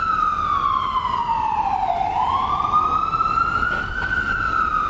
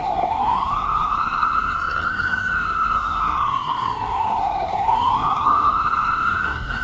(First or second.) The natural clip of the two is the first